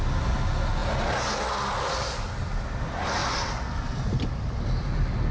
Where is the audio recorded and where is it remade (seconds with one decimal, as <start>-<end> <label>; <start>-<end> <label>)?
0.0-5.3 recorded